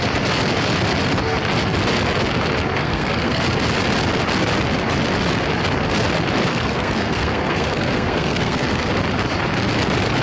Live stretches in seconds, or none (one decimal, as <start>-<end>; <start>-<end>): 0.0-2.8; 3.4-6.5; 8.9-10.2